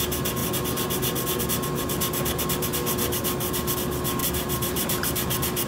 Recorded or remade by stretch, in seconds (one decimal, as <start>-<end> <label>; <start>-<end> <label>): 0.0-4.2 recorded; 4.2-5.7 remade